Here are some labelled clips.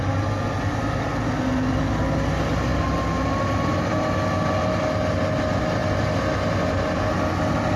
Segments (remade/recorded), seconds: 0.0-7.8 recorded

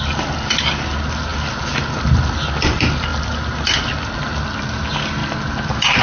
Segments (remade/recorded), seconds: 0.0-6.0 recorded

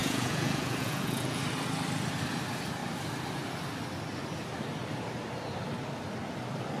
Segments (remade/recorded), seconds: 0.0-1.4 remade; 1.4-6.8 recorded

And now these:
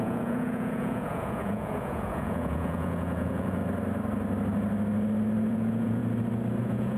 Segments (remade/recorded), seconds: 0.0-3.6 remade; 3.6-5.5 recorded; 5.5-6.0 remade; 6.0-6.6 recorded; 6.6-7.0 remade

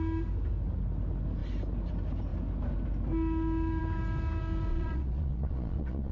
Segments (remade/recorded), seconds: 0.0-4.7 recorded; 4.7-6.1 remade